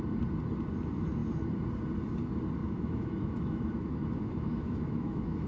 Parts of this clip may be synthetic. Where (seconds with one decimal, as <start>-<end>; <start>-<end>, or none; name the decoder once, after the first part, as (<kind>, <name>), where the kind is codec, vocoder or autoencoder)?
2.6-5.5 (autoencoder, DAC-VAE)